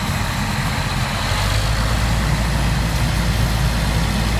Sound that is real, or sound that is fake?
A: real